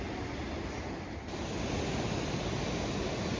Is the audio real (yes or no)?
yes